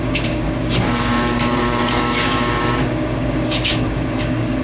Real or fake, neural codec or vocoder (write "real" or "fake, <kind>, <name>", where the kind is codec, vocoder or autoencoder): fake, codec, DAC